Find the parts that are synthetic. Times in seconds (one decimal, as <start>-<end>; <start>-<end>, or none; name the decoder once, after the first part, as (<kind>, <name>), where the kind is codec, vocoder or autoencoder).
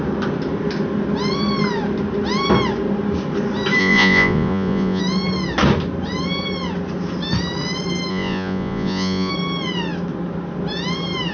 3.8-5.0 (vocoder, Vocos); 8.1-9.3